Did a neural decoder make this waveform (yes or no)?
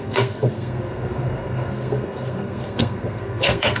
yes